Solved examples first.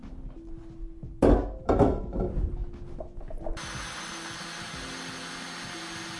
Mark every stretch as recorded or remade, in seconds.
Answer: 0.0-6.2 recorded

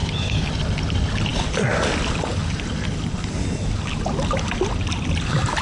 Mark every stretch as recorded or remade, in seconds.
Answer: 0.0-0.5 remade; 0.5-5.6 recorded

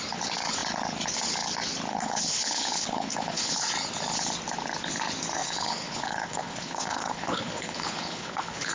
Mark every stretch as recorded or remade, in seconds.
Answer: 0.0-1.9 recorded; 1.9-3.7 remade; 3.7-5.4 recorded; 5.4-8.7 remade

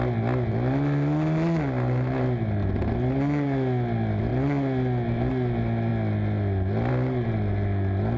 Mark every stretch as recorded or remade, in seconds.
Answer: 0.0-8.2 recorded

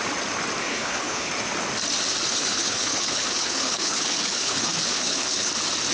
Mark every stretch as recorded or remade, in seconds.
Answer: 0.0-0.6 recorded; 0.6-1.3 remade; 1.3-2.3 recorded; 2.3-5.5 remade; 5.5-5.9 recorded

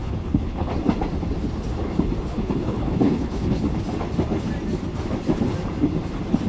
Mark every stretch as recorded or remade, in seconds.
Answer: 0.0-0.7 remade; 0.7-2.3 recorded; 2.3-3.6 remade; 3.6-6.5 recorded

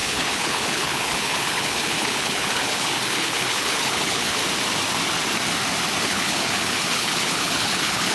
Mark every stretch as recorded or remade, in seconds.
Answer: 0.0-4.4 remade; 4.4-6.0 recorded; 6.0-8.1 remade

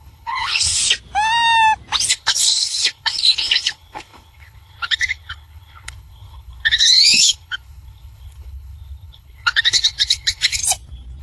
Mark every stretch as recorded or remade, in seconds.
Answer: 0.0-0.8 remade; 0.8-2.1 recorded; 2.1-10.6 remade; 10.6-11.2 recorded